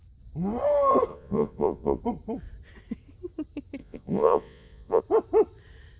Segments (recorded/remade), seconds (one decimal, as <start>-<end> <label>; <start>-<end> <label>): 0.0-1.1 recorded; 1.1-2.0 remade; 2.0-3.8 recorded; 3.8-5.0 remade; 5.0-6.0 recorded